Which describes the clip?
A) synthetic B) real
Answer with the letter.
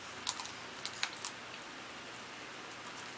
B